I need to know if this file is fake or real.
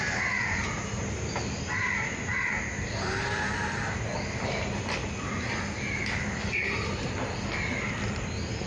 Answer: real